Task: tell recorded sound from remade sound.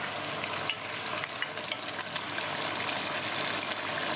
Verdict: recorded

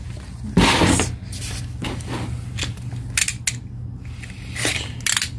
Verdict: recorded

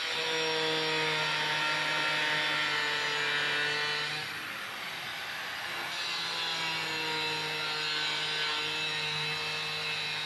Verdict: recorded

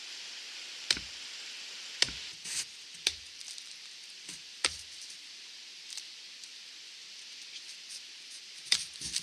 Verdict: recorded